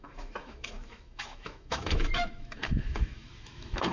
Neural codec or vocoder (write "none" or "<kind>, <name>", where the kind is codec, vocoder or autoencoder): autoencoder, DAC-VAE